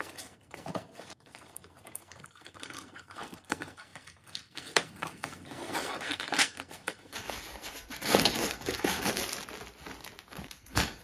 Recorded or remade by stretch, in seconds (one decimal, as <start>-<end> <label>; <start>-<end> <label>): 0.0-9.2 remade; 9.2-10.3 recorded; 10.3-11.0 remade